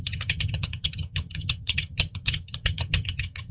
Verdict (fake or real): fake